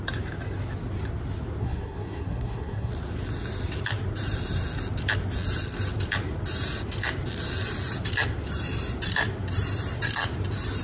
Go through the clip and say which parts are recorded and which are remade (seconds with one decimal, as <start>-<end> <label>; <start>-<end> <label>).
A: 0.0-1.6 recorded; 1.6-2.9 remade; 2.9-10.8 recorded